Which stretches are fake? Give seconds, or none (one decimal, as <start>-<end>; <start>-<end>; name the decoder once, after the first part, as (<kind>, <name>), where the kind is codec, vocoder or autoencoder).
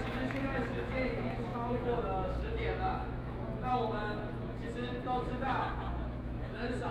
0.0-6.9 (autoencoder, DAC-VAE)